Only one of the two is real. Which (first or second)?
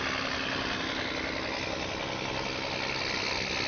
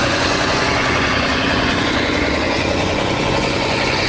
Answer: first